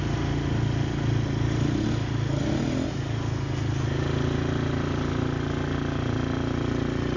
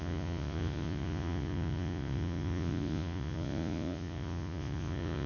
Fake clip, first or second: second